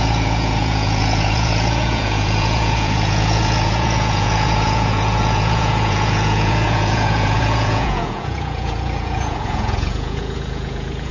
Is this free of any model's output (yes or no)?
no